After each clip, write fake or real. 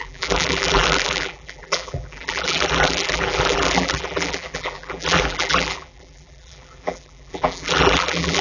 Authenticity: fake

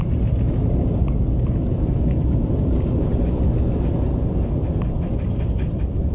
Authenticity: real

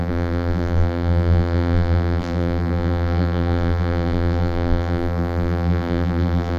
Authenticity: fake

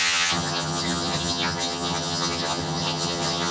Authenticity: fake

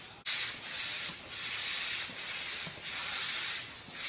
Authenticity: real